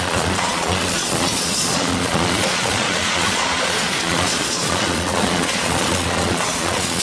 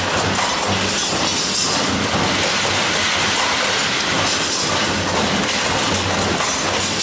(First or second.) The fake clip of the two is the first